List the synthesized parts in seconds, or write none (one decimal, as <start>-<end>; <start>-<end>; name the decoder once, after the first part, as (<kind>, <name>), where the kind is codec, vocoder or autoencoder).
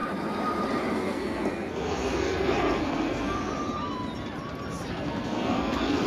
0.9-3.5 (codec, SNAC); 4.9-6.1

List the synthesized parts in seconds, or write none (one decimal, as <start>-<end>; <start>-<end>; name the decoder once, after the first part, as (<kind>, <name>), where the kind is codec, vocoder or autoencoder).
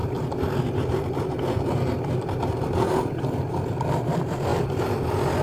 0.0-3.2 (vocoder, BigVGAN v2); 4.5-5.4